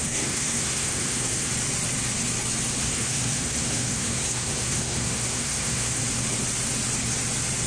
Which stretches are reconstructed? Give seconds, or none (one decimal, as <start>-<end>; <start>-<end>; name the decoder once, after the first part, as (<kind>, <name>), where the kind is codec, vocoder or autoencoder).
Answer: 0.0-1.5 (codec, SNAC); 2.8-6.0